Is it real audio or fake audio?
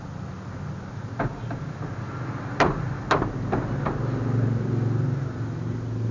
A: real